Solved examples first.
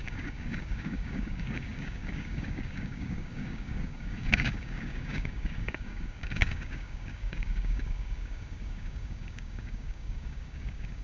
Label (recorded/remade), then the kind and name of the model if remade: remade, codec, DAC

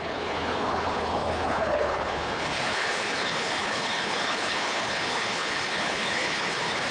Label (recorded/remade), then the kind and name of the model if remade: remade, codec, HILCodec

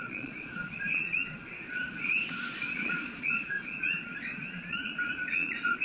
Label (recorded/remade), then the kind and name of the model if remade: remade, vocoder, Vocos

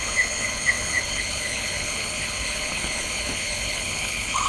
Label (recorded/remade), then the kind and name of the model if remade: remade, codec, HILCodec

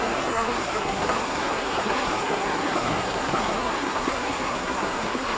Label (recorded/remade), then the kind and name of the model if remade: remade, codec, SNAC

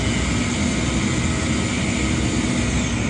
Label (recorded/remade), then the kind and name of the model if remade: recorded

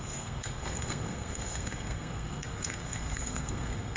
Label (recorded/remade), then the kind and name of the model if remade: remade, codec, SNAC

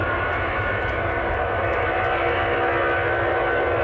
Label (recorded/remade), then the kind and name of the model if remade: recorded